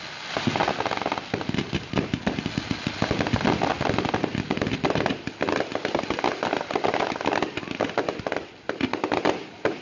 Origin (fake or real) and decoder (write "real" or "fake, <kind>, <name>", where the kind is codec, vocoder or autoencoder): real